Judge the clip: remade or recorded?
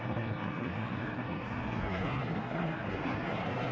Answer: remade